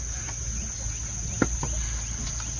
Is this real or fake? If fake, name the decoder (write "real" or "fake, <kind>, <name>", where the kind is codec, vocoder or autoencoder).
real